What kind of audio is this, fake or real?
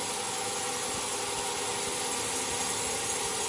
real